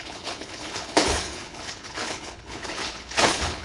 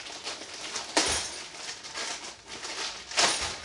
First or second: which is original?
second